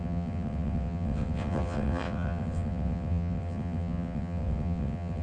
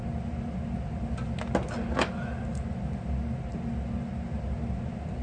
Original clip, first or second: second